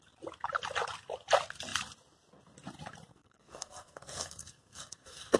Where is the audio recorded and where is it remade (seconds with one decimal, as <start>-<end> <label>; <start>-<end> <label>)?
0.0-3.1 recorded; 3.1-5.4 remade

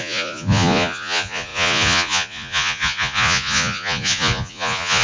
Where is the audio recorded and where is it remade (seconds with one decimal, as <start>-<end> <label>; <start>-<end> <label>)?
0.0-5.0 remade